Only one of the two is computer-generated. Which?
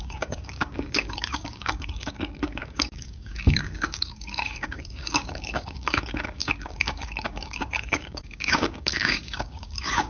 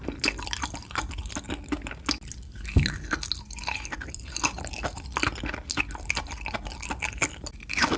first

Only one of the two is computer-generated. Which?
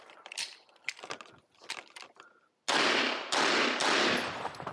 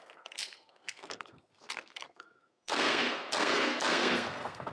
second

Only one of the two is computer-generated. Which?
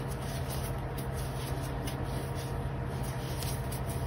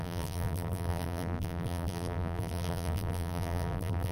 second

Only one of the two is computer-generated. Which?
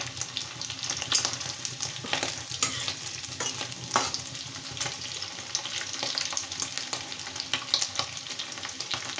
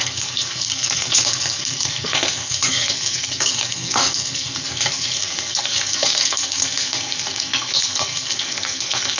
second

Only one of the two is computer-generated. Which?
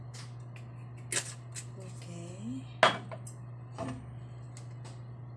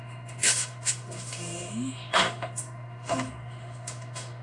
second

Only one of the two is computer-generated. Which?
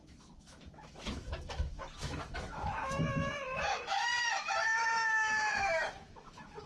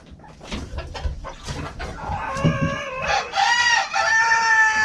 first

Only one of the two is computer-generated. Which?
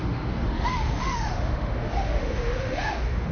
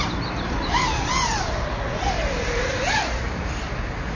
first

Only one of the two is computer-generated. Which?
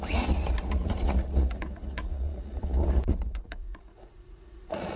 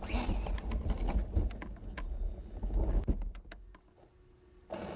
first